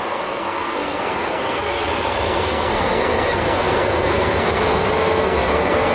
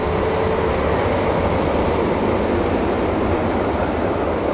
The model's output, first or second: first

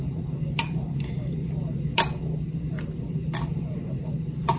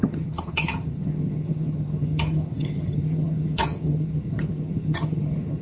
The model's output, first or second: second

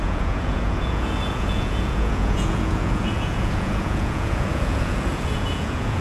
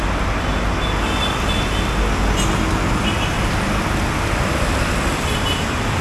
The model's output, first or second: first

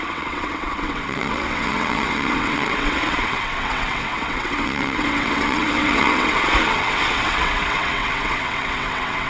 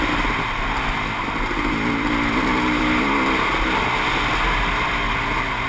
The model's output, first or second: first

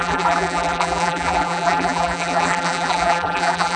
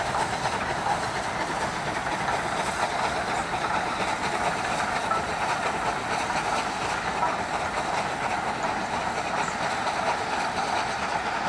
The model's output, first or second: first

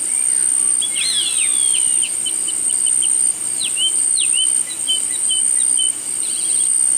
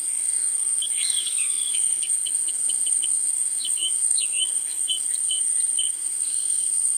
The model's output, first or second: second